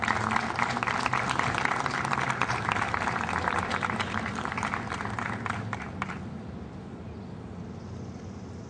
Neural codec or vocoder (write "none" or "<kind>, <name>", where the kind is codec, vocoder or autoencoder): none